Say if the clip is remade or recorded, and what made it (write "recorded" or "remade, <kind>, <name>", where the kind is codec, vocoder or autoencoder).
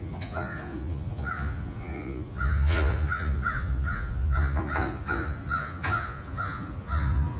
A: remade, vocoder, Vocos